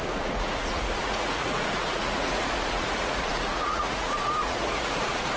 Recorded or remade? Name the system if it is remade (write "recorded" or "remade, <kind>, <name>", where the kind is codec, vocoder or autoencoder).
remade, vocoder, Vocos